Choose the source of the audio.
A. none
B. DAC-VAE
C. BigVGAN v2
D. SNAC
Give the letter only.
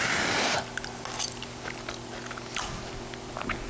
A